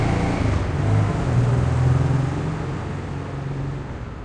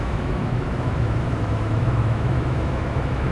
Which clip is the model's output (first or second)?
second